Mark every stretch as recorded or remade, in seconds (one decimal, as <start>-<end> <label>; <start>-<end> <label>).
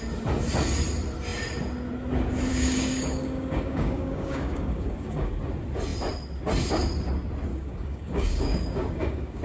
0.0-2.5 recorded; 2.5-5.3 remade; 5.3-7.5 recorded; 7.5-9.4 remade